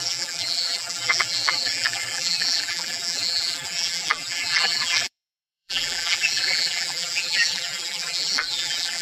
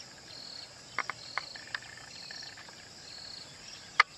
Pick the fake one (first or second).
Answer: first